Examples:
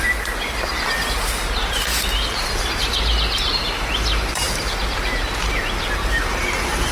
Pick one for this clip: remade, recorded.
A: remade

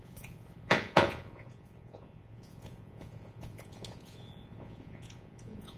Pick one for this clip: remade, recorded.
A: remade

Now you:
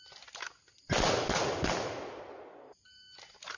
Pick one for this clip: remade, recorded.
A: recorded